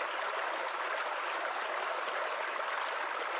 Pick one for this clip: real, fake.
real